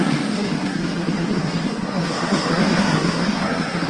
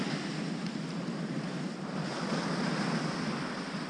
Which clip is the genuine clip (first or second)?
second